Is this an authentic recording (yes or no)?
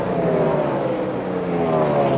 yes